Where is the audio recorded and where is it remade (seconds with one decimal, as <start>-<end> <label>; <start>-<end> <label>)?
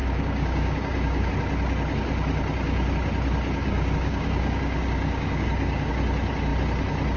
0.0-1.3 remade; 1.3-3.6 recorded; 3.6-5.9 remade; 5.9-7.2 recorded